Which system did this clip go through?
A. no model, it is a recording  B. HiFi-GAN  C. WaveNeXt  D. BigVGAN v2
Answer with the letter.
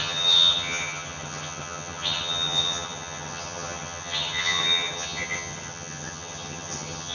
B